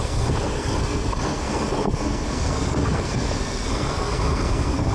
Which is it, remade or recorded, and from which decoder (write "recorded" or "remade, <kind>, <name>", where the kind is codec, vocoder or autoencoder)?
remade, codec, SNAC